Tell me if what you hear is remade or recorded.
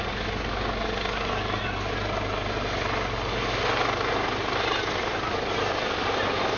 recorded